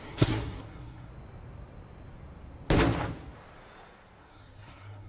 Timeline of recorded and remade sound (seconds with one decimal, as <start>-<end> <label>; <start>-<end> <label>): 0.0-1.1 remade; 1.1-4.2 recorded; 4.2-5.1 remade